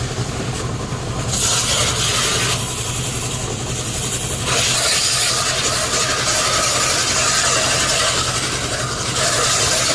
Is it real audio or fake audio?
real